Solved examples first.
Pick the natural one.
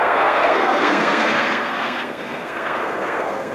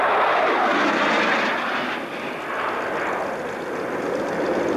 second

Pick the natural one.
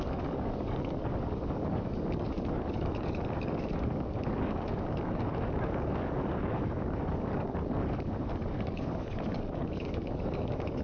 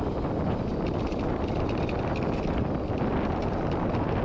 second